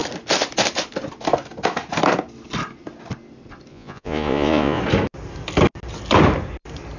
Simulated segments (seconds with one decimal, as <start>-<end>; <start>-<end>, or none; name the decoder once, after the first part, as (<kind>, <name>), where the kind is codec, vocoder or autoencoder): 3.7-4.8 (vocoder, Vocos)